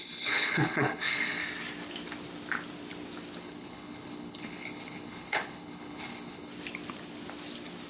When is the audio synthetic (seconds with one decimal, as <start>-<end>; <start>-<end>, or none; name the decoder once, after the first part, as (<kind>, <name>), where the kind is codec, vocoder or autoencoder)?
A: 0.0-1.4 (codec, HILCodec); 3.4-6.5